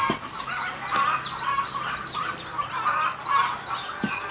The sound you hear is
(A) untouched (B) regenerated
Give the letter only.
A